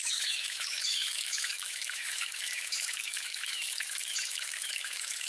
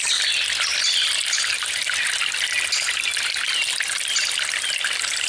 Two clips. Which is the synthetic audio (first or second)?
first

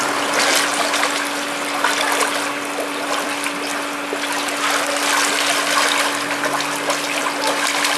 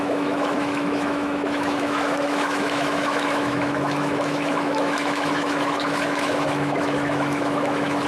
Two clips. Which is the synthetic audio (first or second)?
second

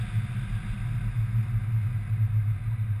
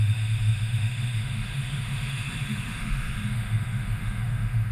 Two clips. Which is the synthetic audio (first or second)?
second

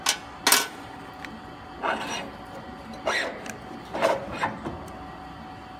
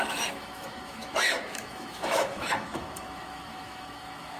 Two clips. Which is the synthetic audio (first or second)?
second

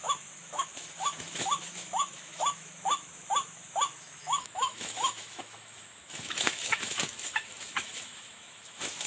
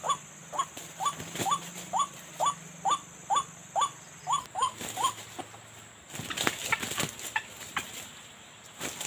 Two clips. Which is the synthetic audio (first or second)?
first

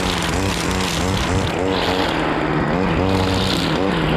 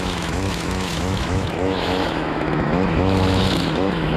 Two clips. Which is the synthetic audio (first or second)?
second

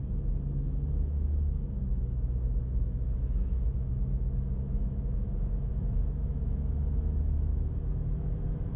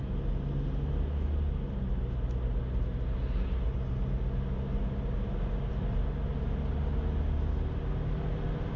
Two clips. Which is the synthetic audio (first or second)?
first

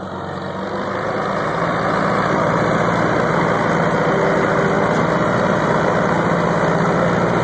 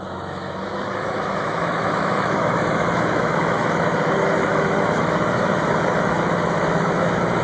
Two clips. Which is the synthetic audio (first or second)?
second